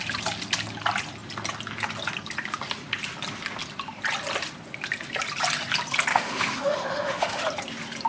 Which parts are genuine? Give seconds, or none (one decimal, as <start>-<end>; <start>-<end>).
0.0-6.1; 7.4-8.1